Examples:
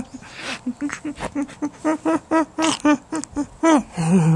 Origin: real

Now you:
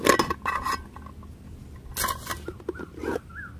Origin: real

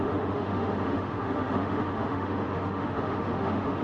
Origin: fake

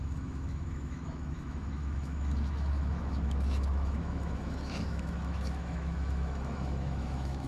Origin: fake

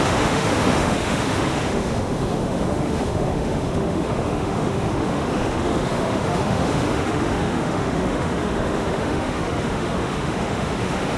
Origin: fake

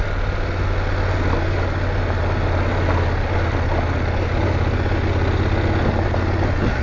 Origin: real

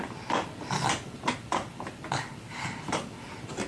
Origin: real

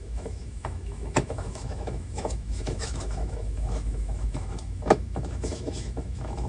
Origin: fake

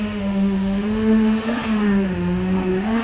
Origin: fake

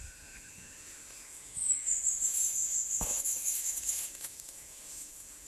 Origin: fake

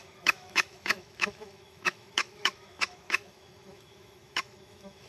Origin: fake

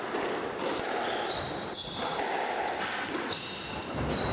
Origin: real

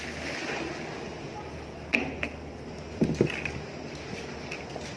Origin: real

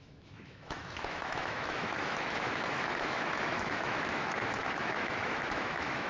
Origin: fake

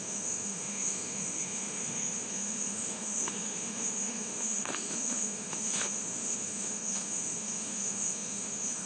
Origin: fake